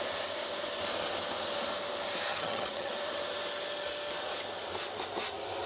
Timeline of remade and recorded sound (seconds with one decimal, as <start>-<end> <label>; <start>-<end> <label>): 0.0-2.3 recorded; 2.3-2.9 remade; 2.9-5.7 recorded

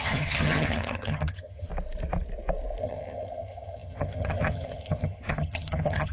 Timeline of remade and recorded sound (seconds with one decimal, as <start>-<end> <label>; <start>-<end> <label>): 0.0-1.7 remade; 1.7-2.8 recorded; 2.8-6.1 remade

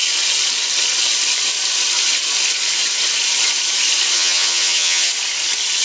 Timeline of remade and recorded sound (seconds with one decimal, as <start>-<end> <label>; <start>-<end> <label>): 0.0-4.1 recorded; 4.1-5.1 remade; 5.1-5.8 recorded

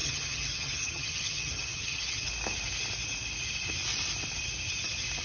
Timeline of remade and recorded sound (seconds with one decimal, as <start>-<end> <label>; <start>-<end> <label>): 0.0-2.3 remade; 2.3-5.2 recorded

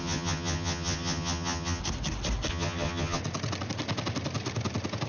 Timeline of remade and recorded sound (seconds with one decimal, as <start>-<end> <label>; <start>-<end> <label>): 0.0-1.8 remade; 1.8-2.5 recorded; 2.5-3.2 remade; 3.2-5.1 recorded

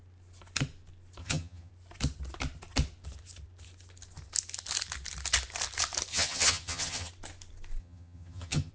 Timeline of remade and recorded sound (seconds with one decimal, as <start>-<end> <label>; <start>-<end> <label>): 0.0-1.2 recorded; 1.2-1.7 remade; 1.7-6.1 recorded; 6.1-7.1 remade; 7.1-7.8 recorded; 7.8-8.7 remade